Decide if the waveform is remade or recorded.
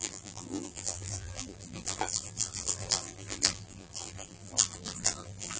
remade